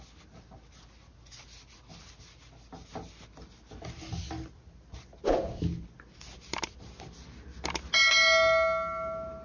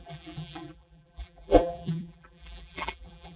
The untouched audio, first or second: first